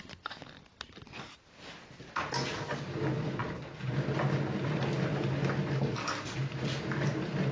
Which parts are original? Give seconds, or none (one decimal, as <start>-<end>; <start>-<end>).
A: 0.0-7.5